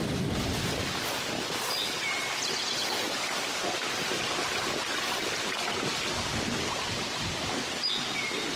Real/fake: real